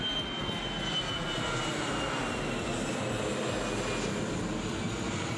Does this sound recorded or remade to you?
recorded